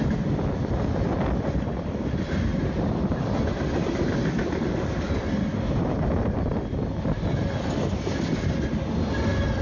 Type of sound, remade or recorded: recorded